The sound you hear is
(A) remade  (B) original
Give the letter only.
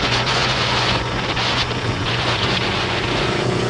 A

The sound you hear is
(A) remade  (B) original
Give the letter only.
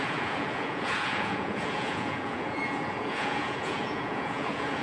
A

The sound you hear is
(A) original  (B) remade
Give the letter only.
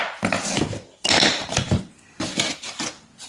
A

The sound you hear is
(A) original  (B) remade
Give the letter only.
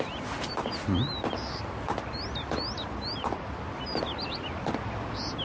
A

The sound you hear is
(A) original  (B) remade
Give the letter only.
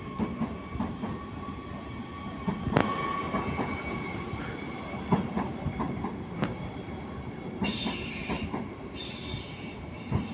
A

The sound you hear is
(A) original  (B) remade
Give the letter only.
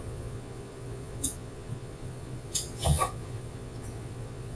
B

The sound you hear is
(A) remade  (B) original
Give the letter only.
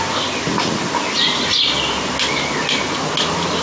B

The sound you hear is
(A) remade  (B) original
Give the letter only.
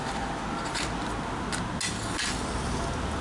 B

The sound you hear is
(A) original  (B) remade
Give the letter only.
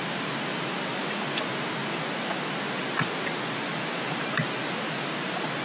A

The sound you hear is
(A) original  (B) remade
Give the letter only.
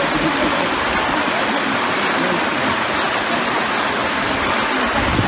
A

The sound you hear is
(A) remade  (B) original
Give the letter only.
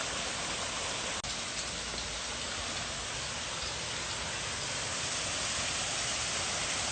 B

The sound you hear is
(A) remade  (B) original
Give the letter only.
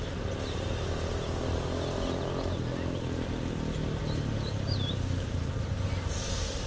B